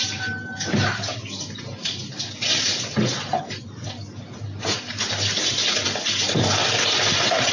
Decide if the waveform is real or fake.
real